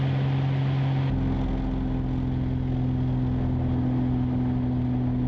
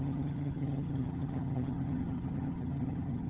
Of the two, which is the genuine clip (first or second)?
first